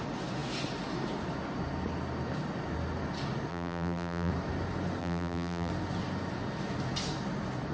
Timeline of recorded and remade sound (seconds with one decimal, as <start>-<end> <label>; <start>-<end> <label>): 0.0-3.5 recorded; 3.5-4.3 remade; 4.3-5.0 recorded; 5.0-5.7 remade; 5.7-7.7 recorded